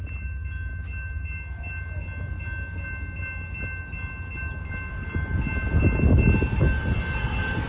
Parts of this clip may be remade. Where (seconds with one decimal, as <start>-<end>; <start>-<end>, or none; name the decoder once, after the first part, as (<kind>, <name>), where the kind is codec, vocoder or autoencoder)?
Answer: none